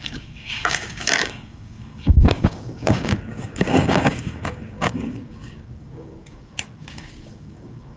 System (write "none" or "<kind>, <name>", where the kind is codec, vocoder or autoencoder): codec, DAC